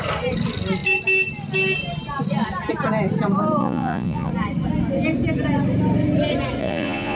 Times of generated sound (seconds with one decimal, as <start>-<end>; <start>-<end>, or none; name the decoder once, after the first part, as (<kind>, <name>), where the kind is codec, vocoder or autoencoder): 3.6-4.3 (vocoder, Vocos); 6.6-7.2